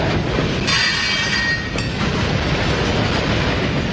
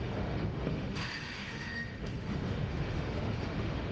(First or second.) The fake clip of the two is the second